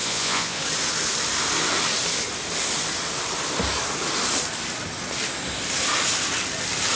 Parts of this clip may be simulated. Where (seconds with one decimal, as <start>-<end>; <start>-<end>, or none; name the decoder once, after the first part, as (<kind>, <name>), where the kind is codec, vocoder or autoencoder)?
0.0-0.6 (vocoder, Vocos)